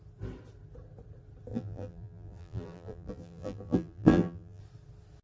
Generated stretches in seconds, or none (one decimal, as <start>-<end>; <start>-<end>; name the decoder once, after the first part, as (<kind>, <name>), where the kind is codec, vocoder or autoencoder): 1.5-4.6 (vocoder, BigVGAN v2)